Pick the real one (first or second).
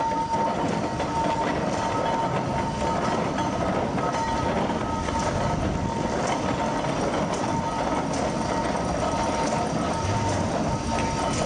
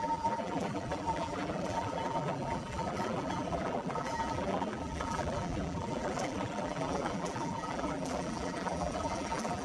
first